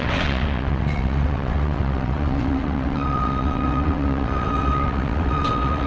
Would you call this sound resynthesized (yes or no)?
yes